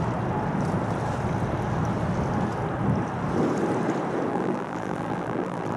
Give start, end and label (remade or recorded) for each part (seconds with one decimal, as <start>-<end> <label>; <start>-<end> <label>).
0.0-4.3 recorded; 4.3-5.8 remade